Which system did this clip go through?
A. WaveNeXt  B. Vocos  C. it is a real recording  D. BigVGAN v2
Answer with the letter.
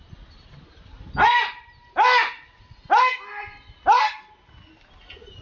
C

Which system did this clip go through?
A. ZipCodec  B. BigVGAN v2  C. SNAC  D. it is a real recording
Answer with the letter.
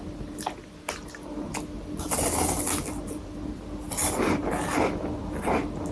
D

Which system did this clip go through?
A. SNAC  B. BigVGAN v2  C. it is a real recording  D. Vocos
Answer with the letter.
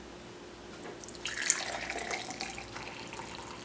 C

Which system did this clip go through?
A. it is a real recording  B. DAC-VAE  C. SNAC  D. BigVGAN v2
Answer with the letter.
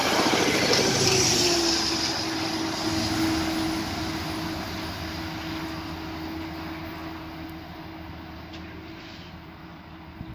A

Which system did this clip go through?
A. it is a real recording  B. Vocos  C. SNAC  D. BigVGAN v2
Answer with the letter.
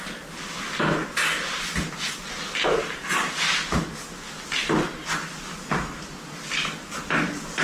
A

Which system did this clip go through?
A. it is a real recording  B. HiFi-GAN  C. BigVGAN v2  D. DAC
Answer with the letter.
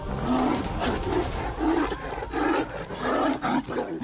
A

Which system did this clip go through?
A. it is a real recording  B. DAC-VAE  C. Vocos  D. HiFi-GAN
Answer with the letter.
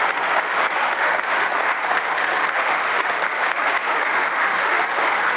B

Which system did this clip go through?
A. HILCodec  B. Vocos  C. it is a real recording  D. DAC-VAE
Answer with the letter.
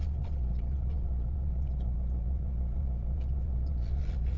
B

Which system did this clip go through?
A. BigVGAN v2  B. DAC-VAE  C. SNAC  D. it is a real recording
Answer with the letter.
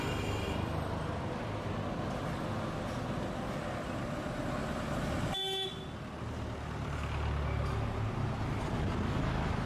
D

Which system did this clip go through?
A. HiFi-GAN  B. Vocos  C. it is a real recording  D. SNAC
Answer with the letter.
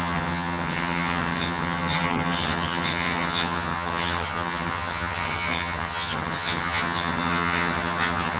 A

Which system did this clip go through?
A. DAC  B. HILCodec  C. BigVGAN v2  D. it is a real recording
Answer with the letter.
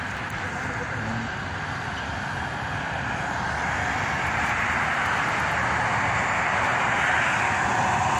D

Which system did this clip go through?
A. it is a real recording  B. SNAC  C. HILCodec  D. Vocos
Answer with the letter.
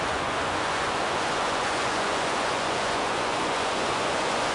D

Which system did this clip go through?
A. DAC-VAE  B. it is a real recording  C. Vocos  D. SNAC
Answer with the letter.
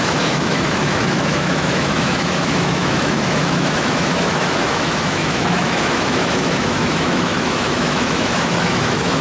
A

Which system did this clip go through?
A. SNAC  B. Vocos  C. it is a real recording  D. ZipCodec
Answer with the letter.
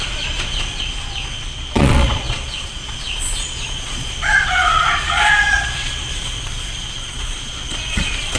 B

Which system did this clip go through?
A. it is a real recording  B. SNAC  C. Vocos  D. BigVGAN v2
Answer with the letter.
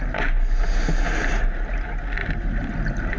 A